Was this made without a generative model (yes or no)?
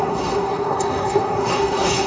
no